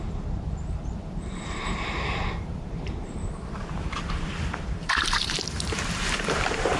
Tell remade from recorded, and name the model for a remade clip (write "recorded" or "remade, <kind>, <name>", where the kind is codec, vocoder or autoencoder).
remade, vocoder, BigVGAN v2